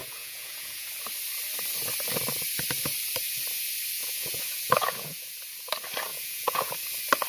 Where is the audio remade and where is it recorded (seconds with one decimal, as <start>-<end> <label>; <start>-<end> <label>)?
0.0-0.9 remade; 0.9-4.0 recorded; 4.0-5.2 remade; 5.2-6.1 recorded; 6.1-6.7 remade; 6.7-7.3 recorded

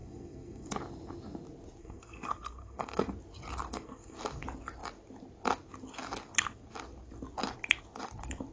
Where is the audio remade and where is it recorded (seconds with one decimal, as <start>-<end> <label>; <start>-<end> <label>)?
0.0-0.7 remade; 0.7-1.8 recorded; 1.8-3.1 remade; 3.1-3.7 recorded; 3.7-4.2 remade; 4.2-8.5 recorded

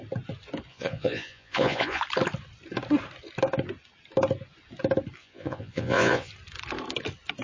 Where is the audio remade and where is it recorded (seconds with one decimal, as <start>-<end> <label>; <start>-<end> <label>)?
0.0-0.7 recorded; 0.7-2.0 remade; 2.0-5.2 recorded; 5.2-6.3 remade; 6.3-7.4 recorded

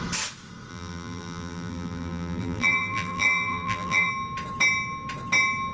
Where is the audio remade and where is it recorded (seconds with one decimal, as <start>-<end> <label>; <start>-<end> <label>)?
0.0-0.7 recorded; 0.7-4.1 remade; 4.1-5.7 recorded